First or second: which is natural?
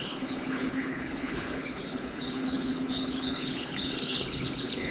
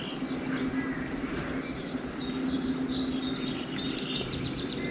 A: second